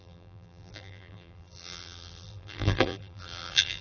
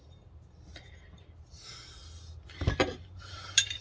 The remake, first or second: first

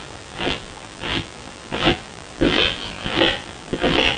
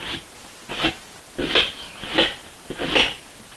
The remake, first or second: first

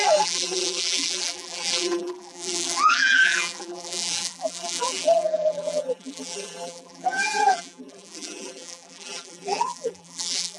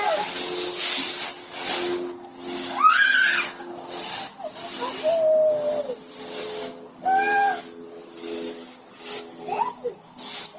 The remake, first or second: first